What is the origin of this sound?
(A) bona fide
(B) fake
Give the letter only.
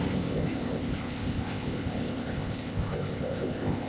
B